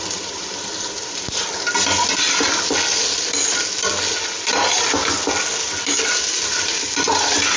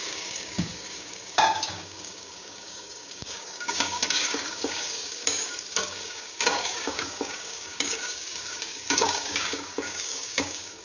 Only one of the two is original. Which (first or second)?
first